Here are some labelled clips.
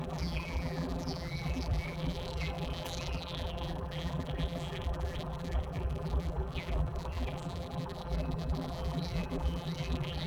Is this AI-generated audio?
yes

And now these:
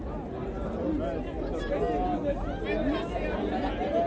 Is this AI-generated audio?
no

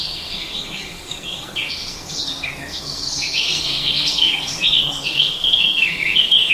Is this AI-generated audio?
yes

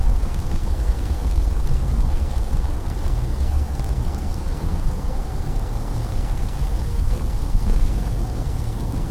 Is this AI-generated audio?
yes